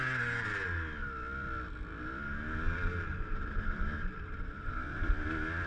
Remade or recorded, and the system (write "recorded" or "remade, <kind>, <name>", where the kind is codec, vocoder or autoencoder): recorded